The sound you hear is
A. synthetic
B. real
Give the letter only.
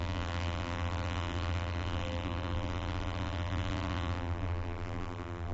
A